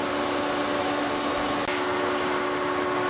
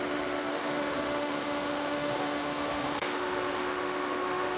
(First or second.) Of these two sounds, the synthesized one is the second